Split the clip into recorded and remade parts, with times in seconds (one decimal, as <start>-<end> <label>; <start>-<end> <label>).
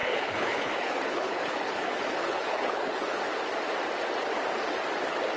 0.0-3.2 remade; 3.2-5.4 recorded